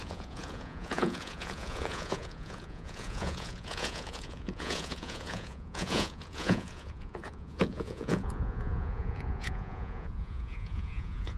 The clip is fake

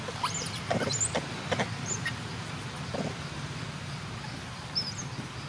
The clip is real